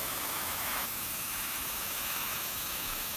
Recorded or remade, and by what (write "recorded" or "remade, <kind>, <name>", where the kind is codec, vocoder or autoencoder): remade, autoencoder, DAC-VAE